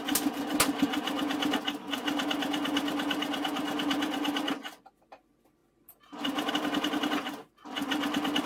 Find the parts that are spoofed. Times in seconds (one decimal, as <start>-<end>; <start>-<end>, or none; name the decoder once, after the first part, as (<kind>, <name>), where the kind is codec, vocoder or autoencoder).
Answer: none